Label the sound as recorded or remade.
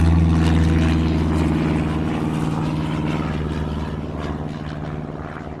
recorded